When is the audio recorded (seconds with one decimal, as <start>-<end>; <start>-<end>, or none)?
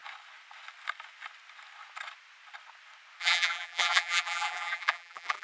0.0-3.2